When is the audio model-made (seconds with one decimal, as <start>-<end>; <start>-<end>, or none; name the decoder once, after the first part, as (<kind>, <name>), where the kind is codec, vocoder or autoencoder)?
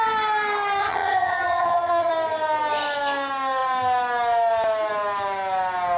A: 0.8-2.1 (vocoder, HiFi-GAN)